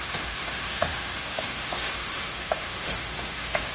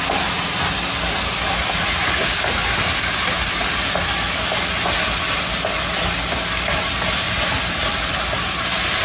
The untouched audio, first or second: second